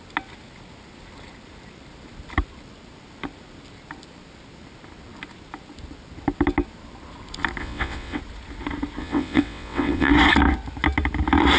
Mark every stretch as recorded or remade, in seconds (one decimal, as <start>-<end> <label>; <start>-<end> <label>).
0.0-7.6 recorded; 7.6-8.2 remade; 8.2-9.0 recorded; 9.0-10.1 remade; 10.1-11.6 recorded